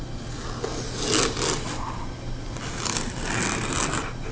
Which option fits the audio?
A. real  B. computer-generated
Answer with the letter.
A